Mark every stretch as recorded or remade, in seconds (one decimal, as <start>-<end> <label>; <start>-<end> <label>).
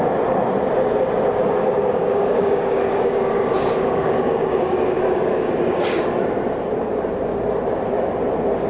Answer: 0.0-1.6 recorded; 1.6-6.1 remade; 6.1-8.7 recorded